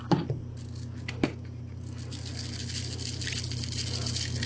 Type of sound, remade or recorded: recorded